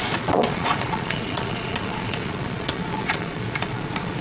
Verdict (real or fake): fake